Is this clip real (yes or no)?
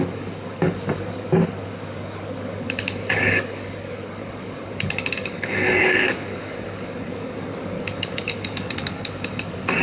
no